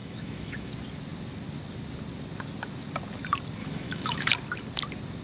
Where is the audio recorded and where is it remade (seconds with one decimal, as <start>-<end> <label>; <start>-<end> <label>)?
0.0-0.7 remade; 0.7-3.6 recorded; 3.6-4.3 remade; 4.3-5.2 recorded